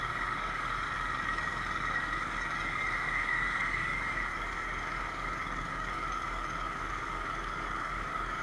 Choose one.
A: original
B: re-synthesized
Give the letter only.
B